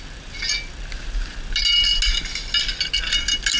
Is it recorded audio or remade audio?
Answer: recorded